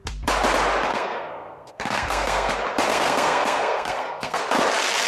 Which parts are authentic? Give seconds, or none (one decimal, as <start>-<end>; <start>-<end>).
0.0-0.9; 2.5-2.9; 4.4-5.1